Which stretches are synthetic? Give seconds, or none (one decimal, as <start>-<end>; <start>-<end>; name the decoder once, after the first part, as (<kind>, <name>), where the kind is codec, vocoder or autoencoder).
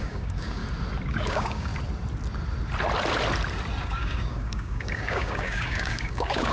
0.0-0.6 (codec, DAC); 1.1-1.7; 3.8-6.5